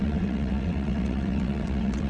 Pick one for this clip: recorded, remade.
remade